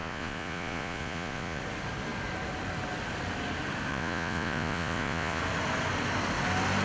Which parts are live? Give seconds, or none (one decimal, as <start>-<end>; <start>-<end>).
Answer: 1.6-3.9; 5.4-6.8